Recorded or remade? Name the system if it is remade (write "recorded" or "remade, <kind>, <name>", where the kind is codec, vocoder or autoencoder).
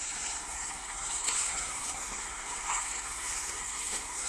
remade, codec, SNAC